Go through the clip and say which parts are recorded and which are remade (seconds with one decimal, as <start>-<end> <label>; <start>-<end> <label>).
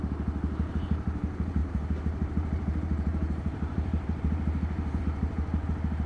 0.0-1.6 recorded; 1.6-5.0 remade; 5.0-6.1 recorded